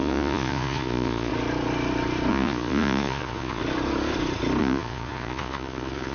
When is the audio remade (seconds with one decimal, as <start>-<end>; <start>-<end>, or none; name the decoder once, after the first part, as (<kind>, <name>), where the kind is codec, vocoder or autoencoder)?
0.0-1.3 (vocoder, Vocos); 2.3-3.6; 4.6-6.1